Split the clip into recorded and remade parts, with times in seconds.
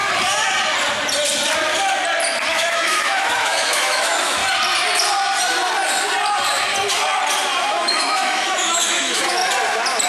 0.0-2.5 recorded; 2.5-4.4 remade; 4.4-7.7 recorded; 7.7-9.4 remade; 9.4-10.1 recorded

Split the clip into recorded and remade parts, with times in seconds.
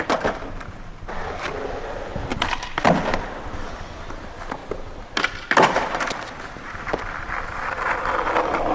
0.0-8.7 recorded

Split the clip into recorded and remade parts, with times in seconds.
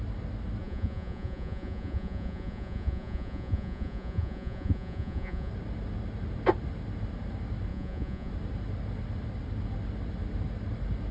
0.0-0.6 recorded; 0.6-5.5 remade; 5.5-7.7 recorded; 7.7-8.3 remade; 8.3-11.1 recorded